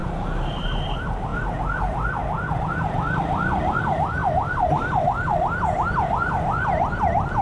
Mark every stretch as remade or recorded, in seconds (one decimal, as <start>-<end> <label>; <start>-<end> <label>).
0.0-0.6 recorded; 0.6-1.3 remade; 1.3-2.6 recorded; 2.6-7.4 remade